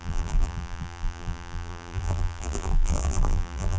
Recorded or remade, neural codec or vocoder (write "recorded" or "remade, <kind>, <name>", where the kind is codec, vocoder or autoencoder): remade, vocoder, BigVGAN v2